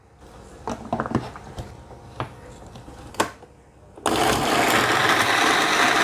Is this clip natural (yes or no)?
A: yes